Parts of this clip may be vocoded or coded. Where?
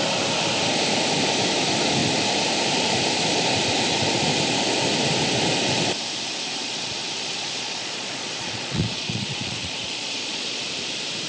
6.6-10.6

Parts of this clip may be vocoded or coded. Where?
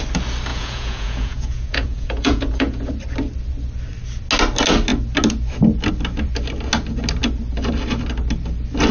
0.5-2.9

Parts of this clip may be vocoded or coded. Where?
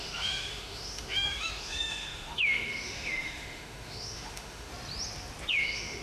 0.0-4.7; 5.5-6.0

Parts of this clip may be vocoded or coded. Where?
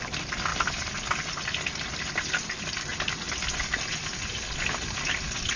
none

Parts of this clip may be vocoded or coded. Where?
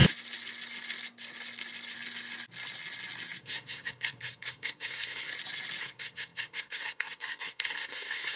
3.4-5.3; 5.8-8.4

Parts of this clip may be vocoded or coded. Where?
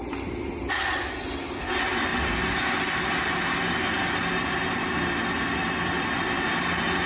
none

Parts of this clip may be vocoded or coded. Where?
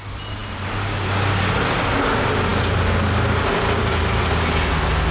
none